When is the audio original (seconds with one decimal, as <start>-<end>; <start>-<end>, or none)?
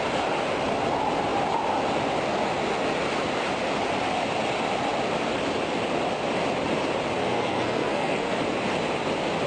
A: 0.0-7.2; 8.4-9.5